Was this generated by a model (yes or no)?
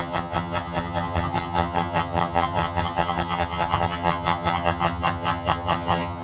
yes